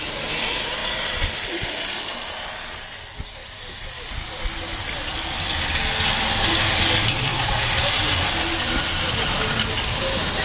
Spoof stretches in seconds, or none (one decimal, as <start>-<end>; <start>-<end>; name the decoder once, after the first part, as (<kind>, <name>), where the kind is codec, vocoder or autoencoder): 0.8-2.4 (vocoder, BigVGAN v2); 3.4-4.2; 7.3-8.1